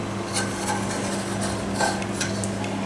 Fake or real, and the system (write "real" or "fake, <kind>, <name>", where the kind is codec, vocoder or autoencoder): real